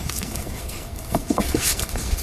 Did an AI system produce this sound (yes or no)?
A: yes